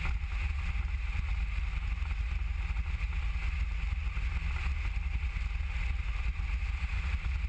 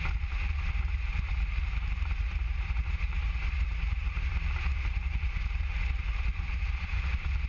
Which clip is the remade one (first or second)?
second